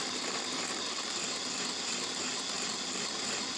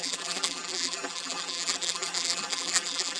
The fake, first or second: second